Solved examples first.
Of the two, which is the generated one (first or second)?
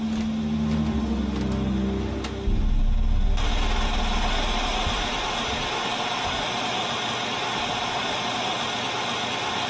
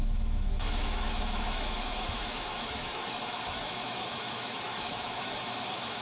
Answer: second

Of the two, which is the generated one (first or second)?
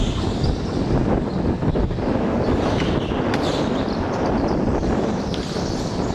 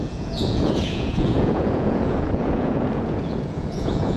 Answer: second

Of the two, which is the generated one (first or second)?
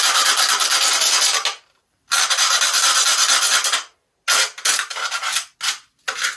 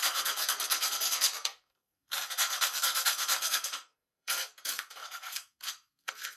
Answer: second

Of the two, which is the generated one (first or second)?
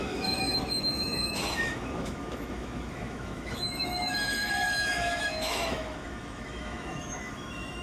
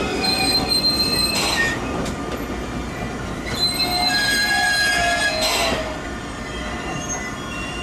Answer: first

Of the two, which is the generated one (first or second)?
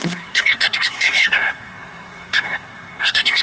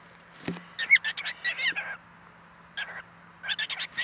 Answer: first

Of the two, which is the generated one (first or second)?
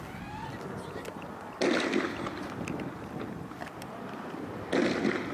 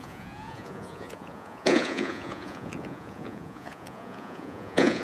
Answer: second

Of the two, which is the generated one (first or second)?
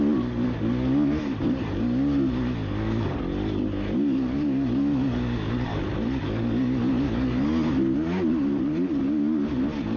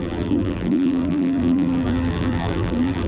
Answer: second